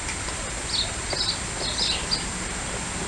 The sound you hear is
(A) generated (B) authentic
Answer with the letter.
B